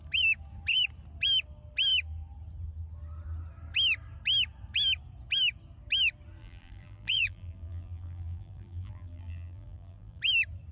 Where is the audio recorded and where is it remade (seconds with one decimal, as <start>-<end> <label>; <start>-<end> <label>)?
0.0-6.4 recorded; 6.4-10.2 remade; 10.2-10.7 recorded